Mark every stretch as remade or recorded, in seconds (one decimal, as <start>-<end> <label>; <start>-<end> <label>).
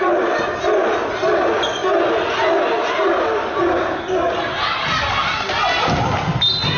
0.0-6.8 recorded